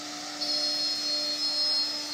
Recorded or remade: recorded